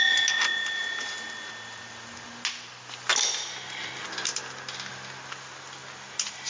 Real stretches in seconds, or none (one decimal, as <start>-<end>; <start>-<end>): 0.0-6.5

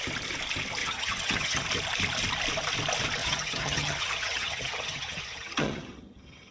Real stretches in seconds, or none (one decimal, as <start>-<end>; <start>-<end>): 0.0-0.8; 1.6-3.2